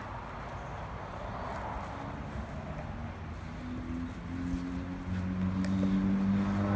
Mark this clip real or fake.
real